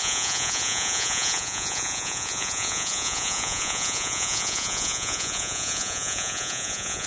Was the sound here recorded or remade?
remade